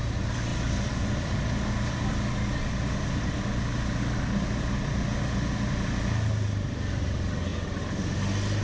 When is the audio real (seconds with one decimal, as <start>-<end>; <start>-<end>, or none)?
0.0-0.5; 2.3-7.5; 8.2-8.6